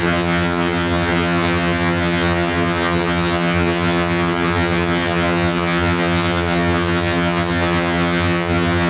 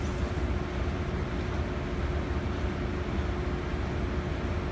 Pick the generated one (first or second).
first